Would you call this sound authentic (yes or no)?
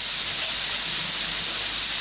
yes